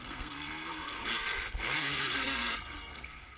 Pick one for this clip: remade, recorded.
remade